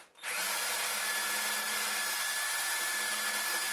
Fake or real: real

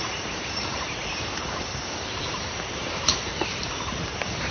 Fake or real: fake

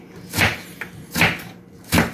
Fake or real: real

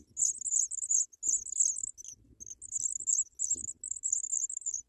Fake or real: real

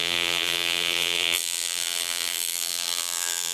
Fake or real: fake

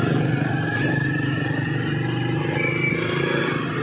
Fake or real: real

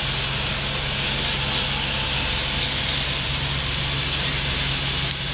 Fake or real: real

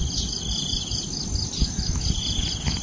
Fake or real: real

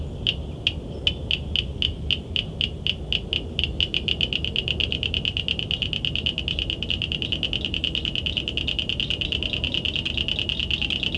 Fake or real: real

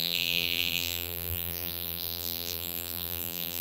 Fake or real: fake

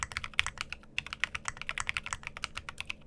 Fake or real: real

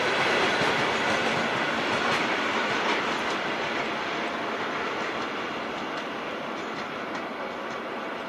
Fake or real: real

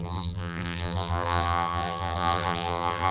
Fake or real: fake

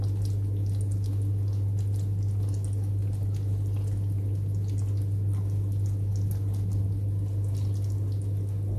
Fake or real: real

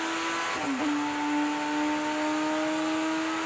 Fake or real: real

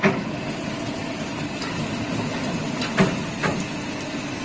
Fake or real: real